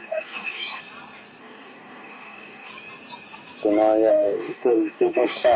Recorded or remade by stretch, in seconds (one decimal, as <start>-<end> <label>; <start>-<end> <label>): 0.0-0.8 remade; 0.8-1.4 recorded; 1.4-2.7 remade; 2.7-4.1 recorded; 4.1-5.6 remade